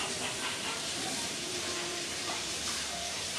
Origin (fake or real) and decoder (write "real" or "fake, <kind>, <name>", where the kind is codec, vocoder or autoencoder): fake, vocoder, BigVGAN v2